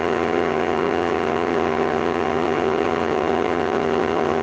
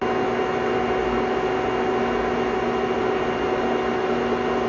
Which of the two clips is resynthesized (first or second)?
first